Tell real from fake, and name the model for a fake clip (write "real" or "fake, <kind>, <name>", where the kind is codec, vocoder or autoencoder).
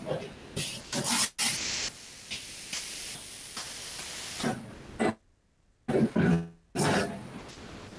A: real